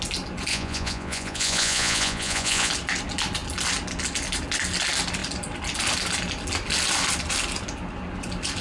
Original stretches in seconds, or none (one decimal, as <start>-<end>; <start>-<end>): 0.0-0.5; 2.7-8.6

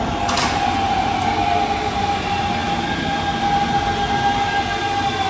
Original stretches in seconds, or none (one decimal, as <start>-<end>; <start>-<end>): 0.0-5.3

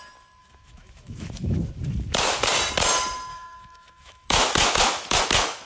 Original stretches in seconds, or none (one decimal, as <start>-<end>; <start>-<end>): 0.0-0.4; 1.6-3.3; 5.2-5.7

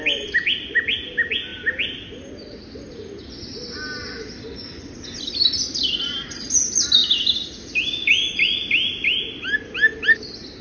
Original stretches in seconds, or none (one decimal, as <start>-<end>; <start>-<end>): 0.0-10.6